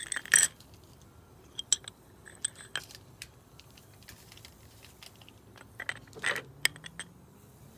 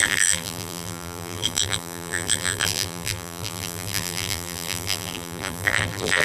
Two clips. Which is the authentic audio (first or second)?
first